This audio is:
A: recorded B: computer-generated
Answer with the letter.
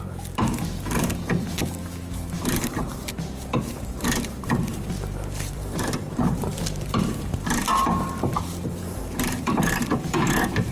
B